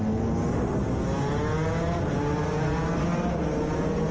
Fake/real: real